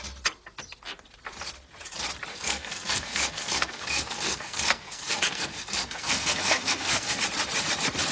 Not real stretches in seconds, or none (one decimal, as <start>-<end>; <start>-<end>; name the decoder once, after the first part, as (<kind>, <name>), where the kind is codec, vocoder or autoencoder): 2.3-7.2 (codec, SNAC)